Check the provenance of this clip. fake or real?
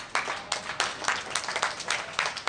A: real